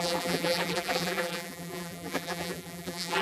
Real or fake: fake